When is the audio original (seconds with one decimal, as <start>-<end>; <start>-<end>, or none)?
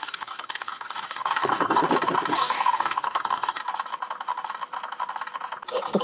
1.8-2.3; 3.6-6.0